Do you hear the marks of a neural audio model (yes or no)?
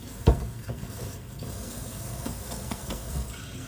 yes